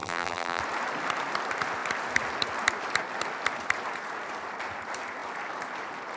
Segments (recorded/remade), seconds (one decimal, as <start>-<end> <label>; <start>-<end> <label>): 0.0-0.6 remade; 0.6-6.2 recorded

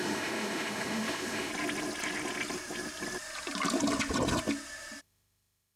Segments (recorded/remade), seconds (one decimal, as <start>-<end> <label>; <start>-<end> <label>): 0.0-1.5 remade; 1.5-5.0 recorded; 5.0-5.8 remade